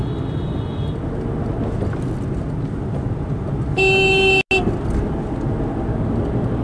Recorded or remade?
recorded